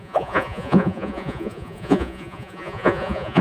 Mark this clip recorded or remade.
remade